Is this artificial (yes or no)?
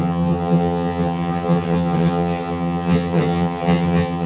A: yes